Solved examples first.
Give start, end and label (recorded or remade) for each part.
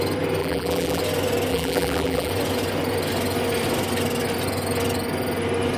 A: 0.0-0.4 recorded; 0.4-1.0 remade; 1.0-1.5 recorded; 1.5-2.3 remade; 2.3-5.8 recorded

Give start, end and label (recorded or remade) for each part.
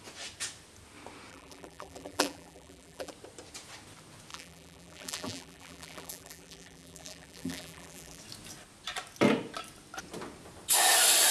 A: 0.0-1.3 recorded; 1.3-3.1 remade; 3.1-4.3 recorded; 4.3-8.2 remade; 8.2-11.3 recorded